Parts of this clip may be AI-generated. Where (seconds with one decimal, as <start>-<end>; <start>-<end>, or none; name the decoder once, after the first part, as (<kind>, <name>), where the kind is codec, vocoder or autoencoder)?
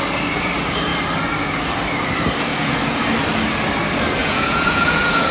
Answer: 2.5-3.0 (vocoder, Vocos); 4.2-5.3